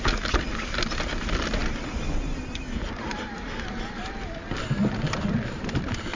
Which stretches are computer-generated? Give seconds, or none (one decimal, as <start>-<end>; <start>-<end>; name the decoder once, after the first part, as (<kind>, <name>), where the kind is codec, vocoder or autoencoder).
none